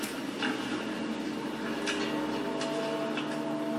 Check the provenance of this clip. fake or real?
real